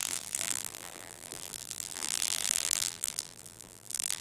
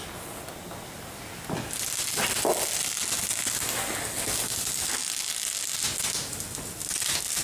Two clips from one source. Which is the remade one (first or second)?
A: first